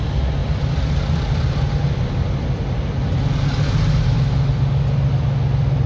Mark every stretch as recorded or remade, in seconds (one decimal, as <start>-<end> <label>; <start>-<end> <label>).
0.0-5.9 recorded